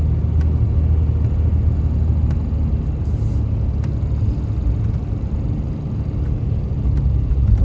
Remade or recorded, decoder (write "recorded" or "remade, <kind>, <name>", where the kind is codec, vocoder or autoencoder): recorded